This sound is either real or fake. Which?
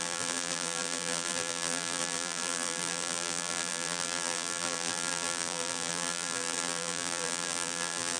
fake